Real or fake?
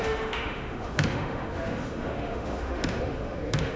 fake